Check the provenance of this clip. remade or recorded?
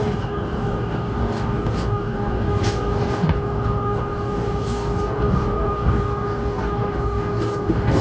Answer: remade